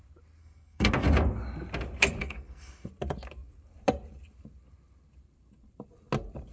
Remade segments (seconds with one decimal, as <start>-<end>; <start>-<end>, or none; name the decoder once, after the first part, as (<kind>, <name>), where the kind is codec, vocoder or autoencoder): 0.4-0.9 (codec, SNAC); 2.2-2.9

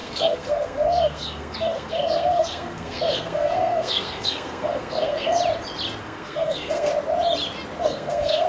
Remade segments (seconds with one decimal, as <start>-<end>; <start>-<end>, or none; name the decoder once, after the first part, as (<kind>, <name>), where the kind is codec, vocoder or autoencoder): 0.0-5.4 (codec, SNAC); 6.0-6.9; 7.8-8.5

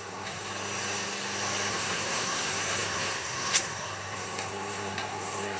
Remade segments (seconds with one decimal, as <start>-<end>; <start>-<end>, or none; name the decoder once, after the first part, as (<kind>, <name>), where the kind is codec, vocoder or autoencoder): 0.0-0.5 (codec, SNAC); 1.7-5.6

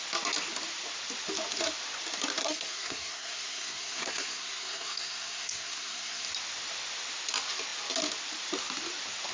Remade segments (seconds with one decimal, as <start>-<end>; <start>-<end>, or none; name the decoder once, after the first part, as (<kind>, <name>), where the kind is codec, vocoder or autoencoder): 2.4-6.3 (codec, SNAC)

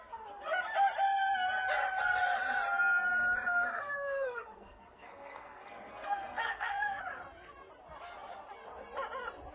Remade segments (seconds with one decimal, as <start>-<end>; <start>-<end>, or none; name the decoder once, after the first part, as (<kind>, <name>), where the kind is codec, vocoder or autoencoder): 3.7-7.0 (codec, SNAC)

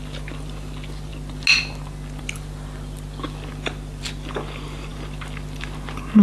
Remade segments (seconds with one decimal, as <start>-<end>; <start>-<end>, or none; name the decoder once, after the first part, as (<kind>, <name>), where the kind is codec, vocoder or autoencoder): none